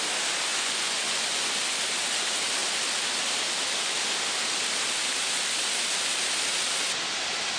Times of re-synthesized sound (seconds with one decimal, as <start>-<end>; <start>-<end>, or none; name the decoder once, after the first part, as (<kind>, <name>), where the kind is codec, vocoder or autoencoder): 0.5-1.6 (vocoder, Vocos)